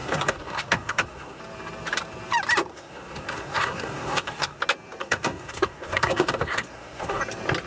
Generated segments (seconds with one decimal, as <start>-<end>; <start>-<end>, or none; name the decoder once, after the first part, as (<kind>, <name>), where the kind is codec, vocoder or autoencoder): 0.0-1.4 (codec, SNAC); 2.7-4.6; 5.0-7.2